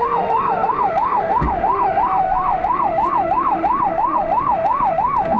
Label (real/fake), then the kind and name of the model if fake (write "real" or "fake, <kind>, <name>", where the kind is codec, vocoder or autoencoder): fake, autoencoder, DAC-VAE